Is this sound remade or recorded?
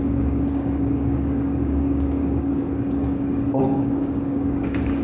remade